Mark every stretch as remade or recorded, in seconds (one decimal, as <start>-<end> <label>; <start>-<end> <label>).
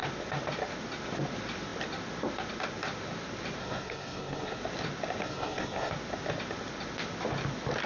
0.0-3.6 recorded; 3.6-4.6 remade; 4.6-5.2 recorded; 5.2-5.9 remade; 5.9-7.9 recorded